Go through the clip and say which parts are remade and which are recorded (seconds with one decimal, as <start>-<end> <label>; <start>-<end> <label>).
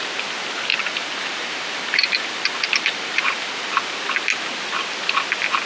0.0-0.7 recorded; 0.7-3.8 remade; 3.8-5.7 recorded